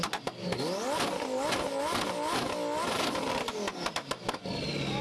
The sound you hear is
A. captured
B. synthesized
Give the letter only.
A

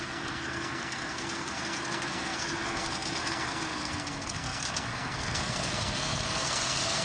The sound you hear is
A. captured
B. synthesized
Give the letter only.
B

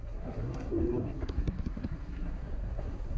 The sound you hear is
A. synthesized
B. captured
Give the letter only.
A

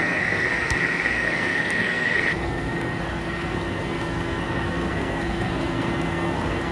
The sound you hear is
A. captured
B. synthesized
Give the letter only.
B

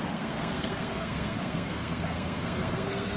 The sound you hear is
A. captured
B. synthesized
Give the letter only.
B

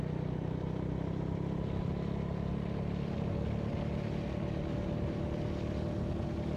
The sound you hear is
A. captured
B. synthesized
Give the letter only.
A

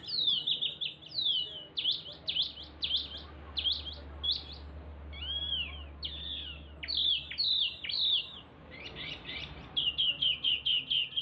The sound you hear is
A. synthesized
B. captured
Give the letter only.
B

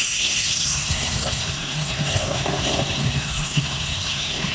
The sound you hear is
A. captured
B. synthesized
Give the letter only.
B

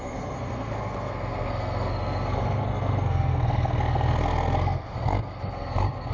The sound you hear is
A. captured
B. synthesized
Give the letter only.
B